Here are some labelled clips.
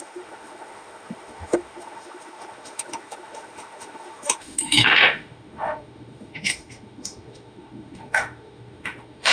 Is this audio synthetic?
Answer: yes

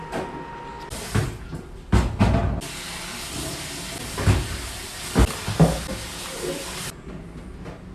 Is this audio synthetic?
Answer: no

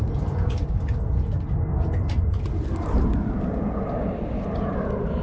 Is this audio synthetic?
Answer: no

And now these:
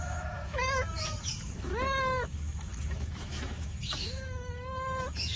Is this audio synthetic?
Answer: yes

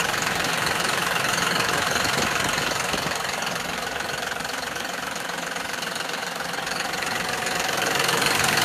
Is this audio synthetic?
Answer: yes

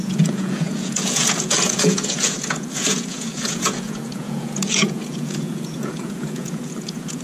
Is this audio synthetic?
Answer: yes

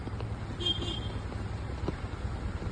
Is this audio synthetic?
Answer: no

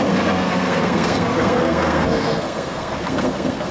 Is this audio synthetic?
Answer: yes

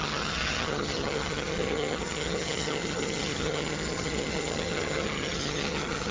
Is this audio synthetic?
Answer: yes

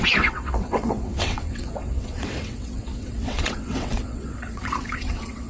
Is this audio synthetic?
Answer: yes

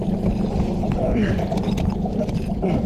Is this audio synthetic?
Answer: yes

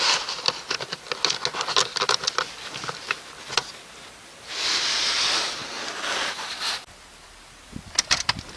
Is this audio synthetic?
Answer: no